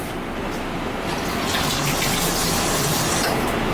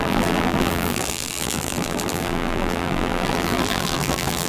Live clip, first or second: first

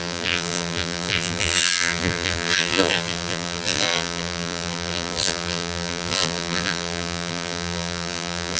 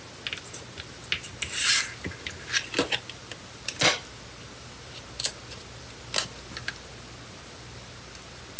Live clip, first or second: second